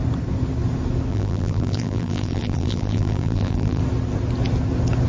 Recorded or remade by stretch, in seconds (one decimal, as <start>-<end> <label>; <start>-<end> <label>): 0.0-1.1 recorded; 1.1-3.8 remade; 3.8-5.1 recorded